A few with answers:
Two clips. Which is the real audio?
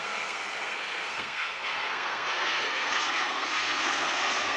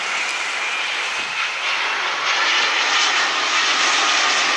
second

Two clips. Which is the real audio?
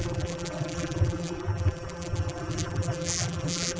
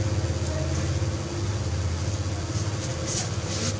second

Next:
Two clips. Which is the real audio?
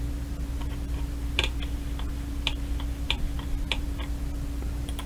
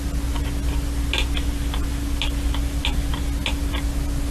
second